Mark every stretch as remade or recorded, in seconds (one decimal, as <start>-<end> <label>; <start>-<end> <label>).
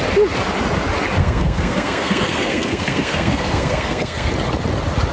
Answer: 0.0-1.2 recorded; 1.2-4.3 remade; 4.3-5.1 recorded